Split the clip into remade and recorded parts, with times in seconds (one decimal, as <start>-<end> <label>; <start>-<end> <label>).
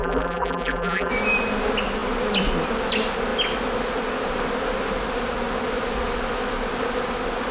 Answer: 0.0-1.1 remade; 1.1-7.5 recorded